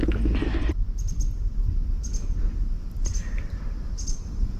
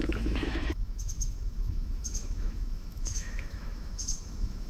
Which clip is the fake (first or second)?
second